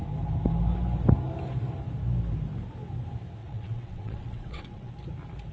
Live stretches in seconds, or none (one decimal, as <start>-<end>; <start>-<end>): 0.0-3.4; 4.9-5.5